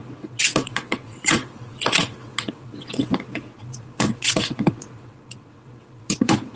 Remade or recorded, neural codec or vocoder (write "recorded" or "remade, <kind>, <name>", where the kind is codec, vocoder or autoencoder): remade, vocoder, WaveNeXt